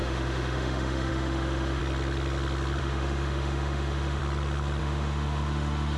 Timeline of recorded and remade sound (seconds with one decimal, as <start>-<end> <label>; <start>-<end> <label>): 0.0-1.8 remade; 1.8-2.8 recorded; 2.8-4.2 remade; 4.2-4.8 recorded; 4.8-6.0 remade